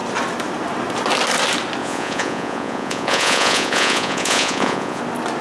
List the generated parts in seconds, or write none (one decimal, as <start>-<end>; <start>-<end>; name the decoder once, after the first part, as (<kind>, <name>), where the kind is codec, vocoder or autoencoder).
1.8-5.0 (vocoder, Vocos)